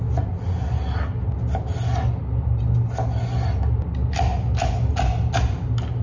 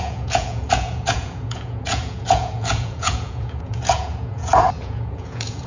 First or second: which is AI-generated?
second